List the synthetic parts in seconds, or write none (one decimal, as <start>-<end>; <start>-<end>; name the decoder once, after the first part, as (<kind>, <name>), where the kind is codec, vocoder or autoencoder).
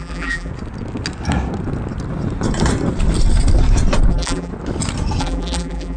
0.0-0.5 (vocoder, BigVGAN v2); 4.1-4.5; 5.2-6.0